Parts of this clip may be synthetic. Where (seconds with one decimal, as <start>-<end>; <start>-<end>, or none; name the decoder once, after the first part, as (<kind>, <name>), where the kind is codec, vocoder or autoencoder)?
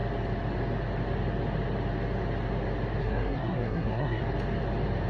3.0-4.2 (codec, SNAC)